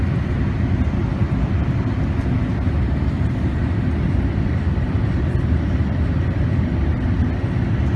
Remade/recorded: recorded